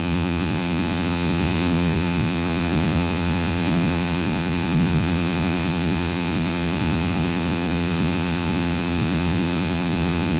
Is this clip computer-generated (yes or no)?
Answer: yes